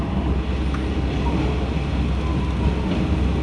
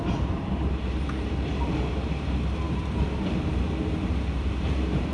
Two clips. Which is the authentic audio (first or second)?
first